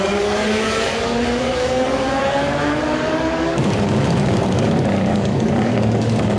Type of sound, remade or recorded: remade